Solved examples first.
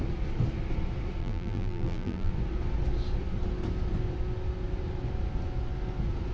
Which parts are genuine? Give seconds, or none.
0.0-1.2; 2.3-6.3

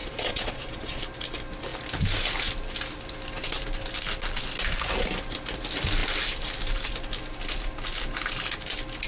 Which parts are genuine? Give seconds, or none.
1.0-9.1